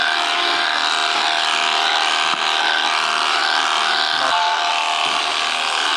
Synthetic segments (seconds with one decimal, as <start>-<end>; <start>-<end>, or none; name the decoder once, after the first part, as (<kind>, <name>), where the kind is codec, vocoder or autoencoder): 1.0-2.1 (vocoder, BigVGAN v2)